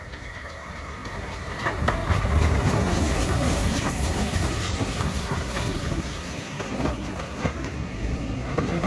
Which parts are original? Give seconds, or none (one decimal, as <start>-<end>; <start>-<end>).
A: none